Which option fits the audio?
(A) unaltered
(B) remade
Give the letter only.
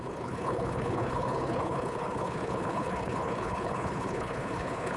B